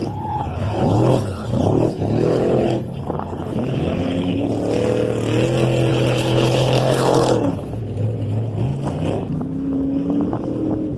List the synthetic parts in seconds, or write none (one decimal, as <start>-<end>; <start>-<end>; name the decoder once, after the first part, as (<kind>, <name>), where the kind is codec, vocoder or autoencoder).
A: 0.0-4.5 (codec, HILCodec); 5.9-7.8